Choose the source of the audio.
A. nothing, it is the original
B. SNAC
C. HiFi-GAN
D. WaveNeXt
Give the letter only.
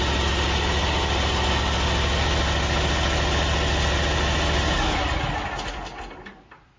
A